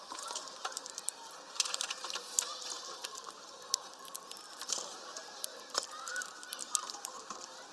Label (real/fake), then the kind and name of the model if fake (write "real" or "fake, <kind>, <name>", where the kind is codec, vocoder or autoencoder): fake, vocoder, BigVGAN v2